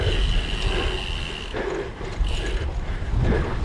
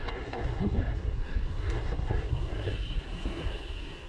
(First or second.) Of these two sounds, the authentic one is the first